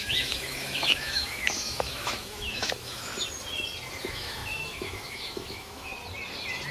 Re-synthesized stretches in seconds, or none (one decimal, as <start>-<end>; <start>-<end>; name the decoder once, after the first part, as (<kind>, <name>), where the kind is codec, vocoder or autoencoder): 0.0-3.1 (autoencoder, DAC-VAE); 4.0-5.9